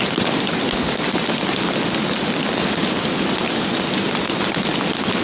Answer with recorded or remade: recorded